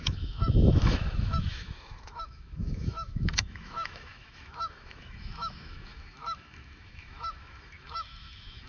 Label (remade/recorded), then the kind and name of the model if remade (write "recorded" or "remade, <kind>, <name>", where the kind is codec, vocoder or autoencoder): remade, autoencoder, DAC-VAE